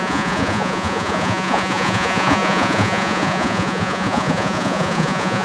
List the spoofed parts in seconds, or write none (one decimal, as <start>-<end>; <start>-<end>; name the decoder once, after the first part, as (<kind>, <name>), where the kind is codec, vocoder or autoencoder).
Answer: 0.0-5.4 (vocoder, Vocos)